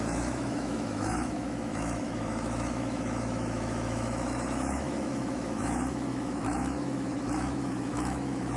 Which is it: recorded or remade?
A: remade